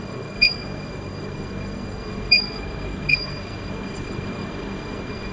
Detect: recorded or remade remade